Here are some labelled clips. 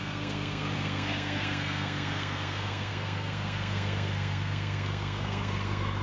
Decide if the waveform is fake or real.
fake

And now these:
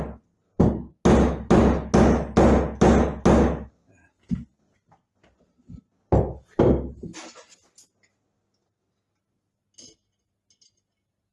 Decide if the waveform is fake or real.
real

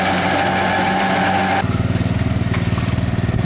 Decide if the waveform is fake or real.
real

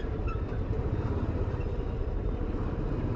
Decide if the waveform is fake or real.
real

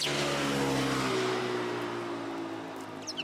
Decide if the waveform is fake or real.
real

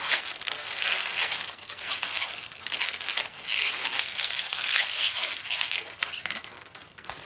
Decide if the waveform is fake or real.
fake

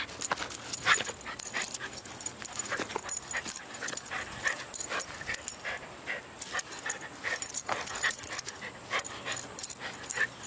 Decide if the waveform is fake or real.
real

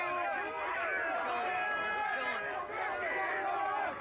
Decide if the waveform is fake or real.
real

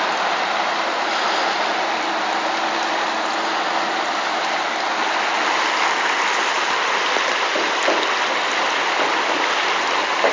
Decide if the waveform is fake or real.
real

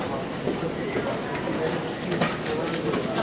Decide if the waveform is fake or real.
real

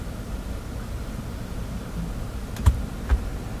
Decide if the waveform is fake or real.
real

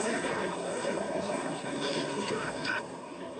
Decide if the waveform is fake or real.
fake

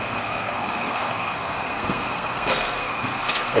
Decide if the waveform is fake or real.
fake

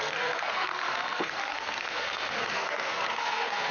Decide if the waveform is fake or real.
fake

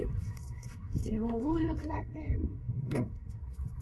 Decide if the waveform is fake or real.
fake